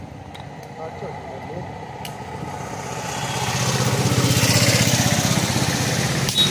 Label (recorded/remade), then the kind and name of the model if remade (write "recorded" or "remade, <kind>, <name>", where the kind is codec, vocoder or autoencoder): recorded